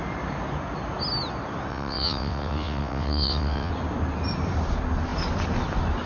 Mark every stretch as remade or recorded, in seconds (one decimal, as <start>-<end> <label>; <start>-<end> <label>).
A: 0.0-1.7 recorded; 1.7-3.7 remade; 3.7-6.1 recorded